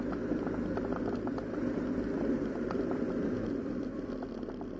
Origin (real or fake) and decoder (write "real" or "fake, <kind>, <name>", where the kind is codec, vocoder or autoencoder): real